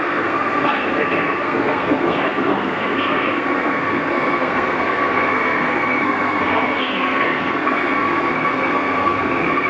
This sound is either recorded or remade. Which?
remade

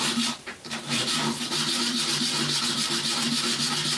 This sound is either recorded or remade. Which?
remade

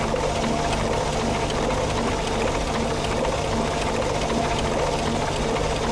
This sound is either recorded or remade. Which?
recorded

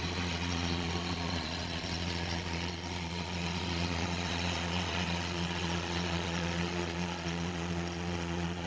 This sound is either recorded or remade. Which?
remade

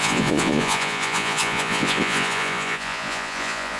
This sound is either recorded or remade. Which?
remade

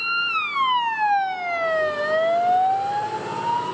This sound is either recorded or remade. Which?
recorded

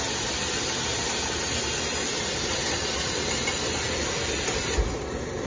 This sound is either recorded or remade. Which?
recorded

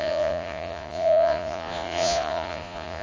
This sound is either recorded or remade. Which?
remade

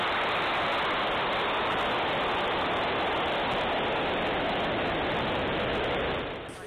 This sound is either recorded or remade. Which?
recorded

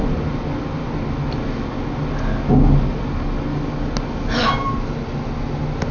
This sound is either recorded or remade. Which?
recorded